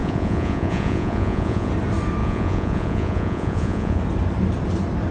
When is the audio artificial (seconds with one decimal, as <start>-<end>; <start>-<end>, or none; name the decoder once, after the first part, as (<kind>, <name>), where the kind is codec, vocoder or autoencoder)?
0.0-1.7 (vocoder, Vocos); 2.2-4.0